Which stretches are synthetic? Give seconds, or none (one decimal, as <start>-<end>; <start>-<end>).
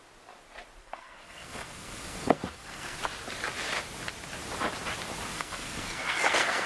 0.8-3.0; 5.3-6.7